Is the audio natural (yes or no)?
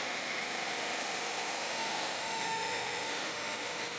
no